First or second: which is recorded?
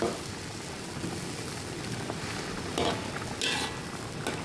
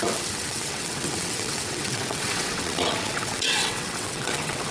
first